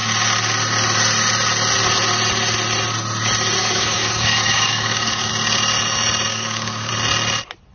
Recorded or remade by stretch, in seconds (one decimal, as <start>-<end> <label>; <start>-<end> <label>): 0.0-3.6 recorded; 3.6-5.3 remade; 5.3-6.3 recorded; 6.3-6.9 remade; 6.9-7.7 recorded